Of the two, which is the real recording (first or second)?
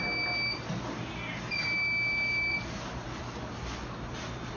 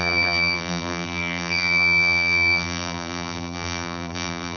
first